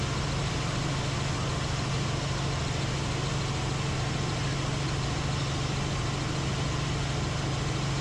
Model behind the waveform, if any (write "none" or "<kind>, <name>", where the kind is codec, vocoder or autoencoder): none